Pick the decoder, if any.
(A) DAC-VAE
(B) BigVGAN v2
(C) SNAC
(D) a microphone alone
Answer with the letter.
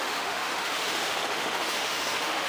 A